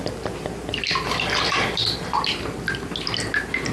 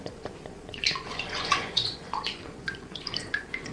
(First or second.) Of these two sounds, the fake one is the second